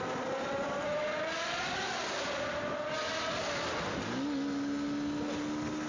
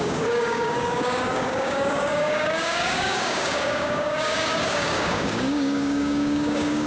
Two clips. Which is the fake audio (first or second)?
second